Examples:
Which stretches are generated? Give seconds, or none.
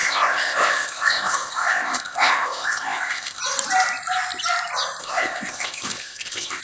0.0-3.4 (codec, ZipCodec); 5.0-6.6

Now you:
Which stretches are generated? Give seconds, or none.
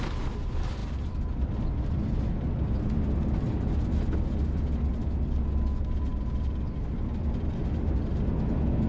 none